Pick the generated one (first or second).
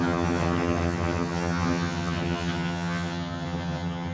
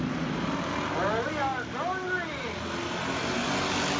first